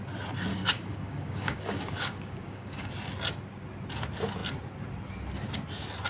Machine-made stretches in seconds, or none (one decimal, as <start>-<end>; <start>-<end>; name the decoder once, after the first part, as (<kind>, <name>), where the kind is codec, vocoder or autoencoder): 0.5-2.9 (codec, DAC)